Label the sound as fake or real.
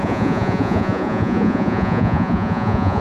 fake